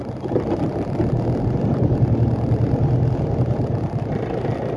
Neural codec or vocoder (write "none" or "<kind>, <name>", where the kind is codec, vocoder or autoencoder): none